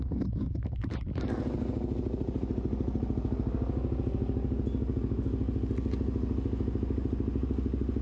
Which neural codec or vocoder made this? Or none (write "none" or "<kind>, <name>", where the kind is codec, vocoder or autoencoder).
none